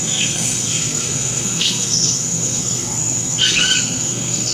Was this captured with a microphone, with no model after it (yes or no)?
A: no